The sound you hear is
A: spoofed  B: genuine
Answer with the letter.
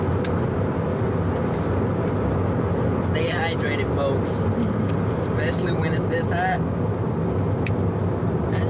B